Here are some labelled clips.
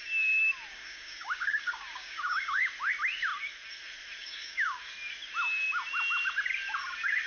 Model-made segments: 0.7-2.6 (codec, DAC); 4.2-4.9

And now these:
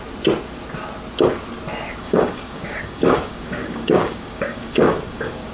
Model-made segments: 2.0-5.5 (codec, DAC)

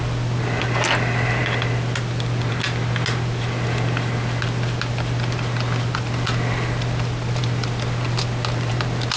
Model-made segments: none

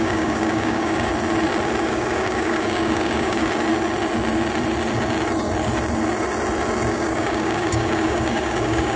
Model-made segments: 0.0-1.1 (codec, DAC); 1.8-3.4; 6.9-9.0